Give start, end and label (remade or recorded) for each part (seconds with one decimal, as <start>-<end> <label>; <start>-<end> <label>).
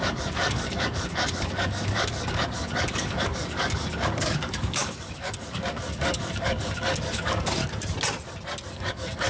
0.0-7.6 remade; 7.6-8.7 recorded; 8.7-9.3 remade